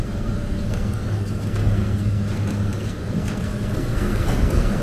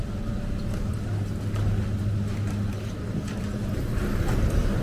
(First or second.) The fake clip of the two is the first